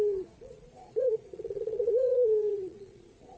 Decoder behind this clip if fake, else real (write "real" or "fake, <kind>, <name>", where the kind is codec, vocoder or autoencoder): fake, vocoder, Vocos